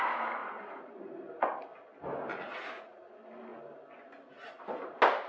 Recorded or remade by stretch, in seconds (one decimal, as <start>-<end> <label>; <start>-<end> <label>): 0.0-2.3 recorded; 2.3-3.0 remade; 3.0-5.3 recorded